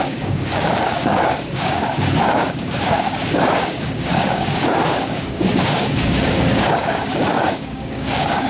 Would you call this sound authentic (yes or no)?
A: no